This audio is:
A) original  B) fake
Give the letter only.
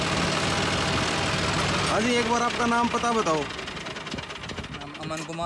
A